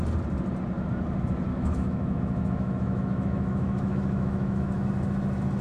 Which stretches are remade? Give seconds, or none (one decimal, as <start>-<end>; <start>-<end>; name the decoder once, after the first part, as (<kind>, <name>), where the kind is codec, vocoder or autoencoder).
1.5-4.9 (autoencoder, DAC-VAE)